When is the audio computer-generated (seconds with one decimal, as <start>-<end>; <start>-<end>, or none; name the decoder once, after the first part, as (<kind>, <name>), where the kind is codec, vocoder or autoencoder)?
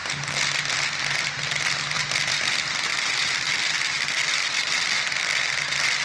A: 2.9-4.9 (vocoder, BigVGAN v2)